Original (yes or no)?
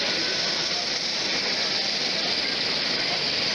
yes